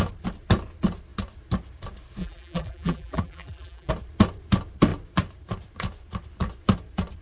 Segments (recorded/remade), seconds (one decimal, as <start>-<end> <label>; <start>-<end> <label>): 0.0-2.2 recorded; 2.2-3.9 remade; 3.9-7.2 recorded